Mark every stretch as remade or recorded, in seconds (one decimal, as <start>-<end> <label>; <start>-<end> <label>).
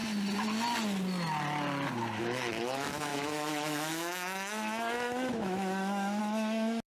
0.0-2.2 recorded; 2.2-6.9 remade